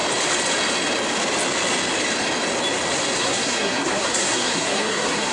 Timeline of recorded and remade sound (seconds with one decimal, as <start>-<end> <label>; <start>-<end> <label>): 0.0-3.2 recorded; 3.2-5.3 remade

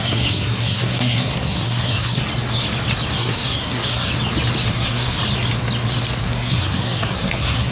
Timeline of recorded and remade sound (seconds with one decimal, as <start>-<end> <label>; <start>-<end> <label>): 0.0-2.2 remade; 2.2-3.1 recorded; 3.1-4.1 remade; 4.1-4.7 recorded; 4.7-5.2 remade; 5.2-6.2 recorded; 6.2-7.7 remade

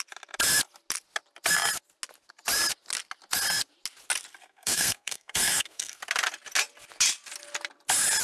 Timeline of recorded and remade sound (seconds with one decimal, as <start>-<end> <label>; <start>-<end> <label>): 0.0-4.4 recorded; 4.4-6.0 remade; 6.0-8.2 recorded

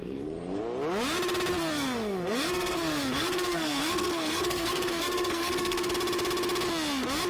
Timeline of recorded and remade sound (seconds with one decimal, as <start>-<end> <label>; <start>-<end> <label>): 0.0-0.6 remade; 0.6-1.5 recorded; 1.5-5.9 remade; 5.9-7.3 recorded

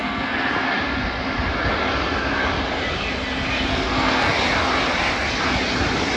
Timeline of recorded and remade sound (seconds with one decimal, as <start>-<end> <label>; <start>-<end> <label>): 0.0-0.5 remade; 0.5-3.7 recorded; 3.7-4.3 remade; 4.3-6.2 recorded

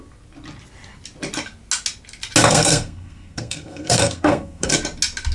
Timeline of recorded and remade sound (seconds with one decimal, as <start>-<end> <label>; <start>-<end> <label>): 0.0-2.5 recorded; 2.5-4.7 remade; 4.7-5.3 recorded